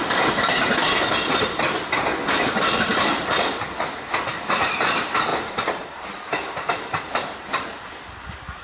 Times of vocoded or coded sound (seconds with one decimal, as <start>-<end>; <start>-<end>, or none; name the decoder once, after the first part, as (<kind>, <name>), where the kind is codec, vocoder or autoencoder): 0.8-1.5 (vocoder, BigVGAN v2); 5.3-5.8